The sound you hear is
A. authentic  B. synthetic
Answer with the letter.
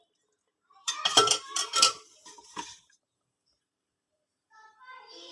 B